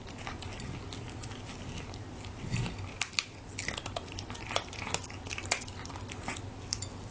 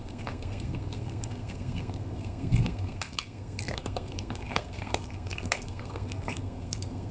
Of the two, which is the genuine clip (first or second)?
first